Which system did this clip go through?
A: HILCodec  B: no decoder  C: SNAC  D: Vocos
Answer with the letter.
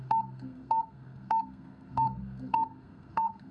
C